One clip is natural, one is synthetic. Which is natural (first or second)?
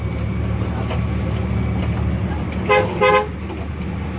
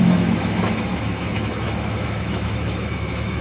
first